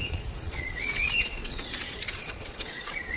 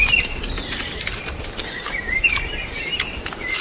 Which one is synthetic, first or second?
first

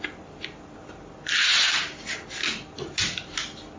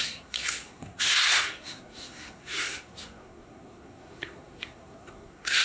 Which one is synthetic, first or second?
second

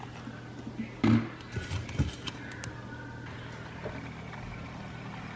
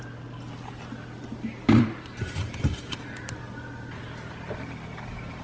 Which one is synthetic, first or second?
second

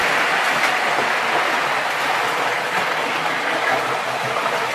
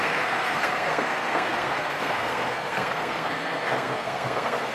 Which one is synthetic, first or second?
second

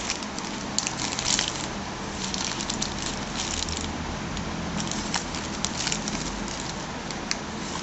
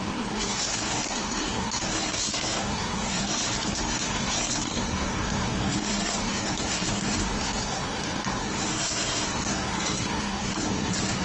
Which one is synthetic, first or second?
second